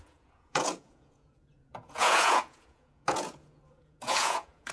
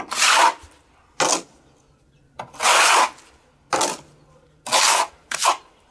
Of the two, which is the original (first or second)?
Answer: second